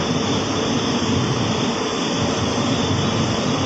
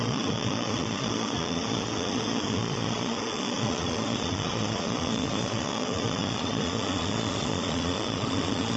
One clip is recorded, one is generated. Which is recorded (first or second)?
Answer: first